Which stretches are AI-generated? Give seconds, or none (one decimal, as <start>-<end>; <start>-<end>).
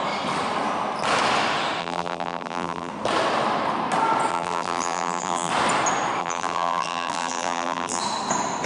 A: 1.8-2.9; 4.3-5.5; 6.2-8.0